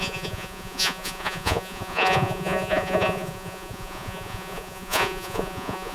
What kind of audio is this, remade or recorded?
remade